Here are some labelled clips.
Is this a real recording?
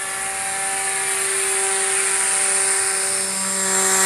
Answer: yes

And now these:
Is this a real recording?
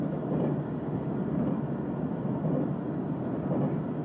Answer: yes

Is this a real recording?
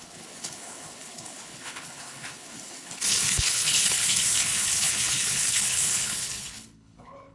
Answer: no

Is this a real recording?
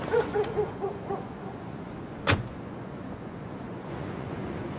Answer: no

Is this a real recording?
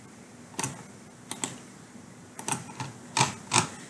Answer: yes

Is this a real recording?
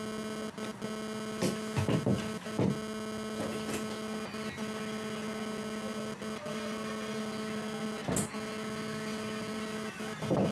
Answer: yes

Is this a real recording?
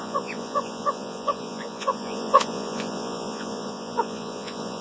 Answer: no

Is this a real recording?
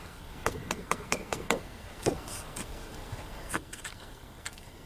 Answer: no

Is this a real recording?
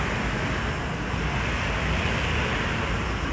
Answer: yes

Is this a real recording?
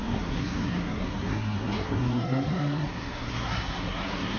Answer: no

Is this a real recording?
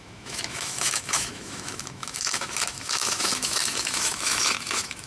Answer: no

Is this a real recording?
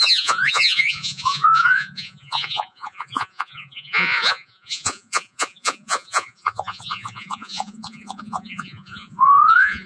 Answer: no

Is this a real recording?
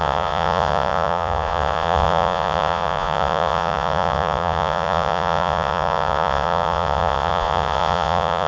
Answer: no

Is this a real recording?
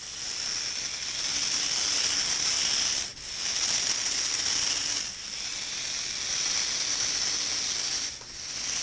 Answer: yes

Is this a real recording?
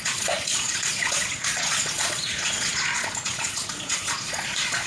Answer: no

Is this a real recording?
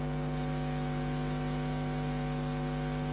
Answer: yes